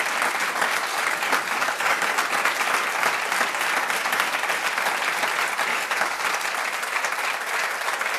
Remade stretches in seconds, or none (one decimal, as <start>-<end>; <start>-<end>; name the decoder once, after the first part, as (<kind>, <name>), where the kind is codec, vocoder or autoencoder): 0.9-2.2 (codec, DAC); 5.7-6.2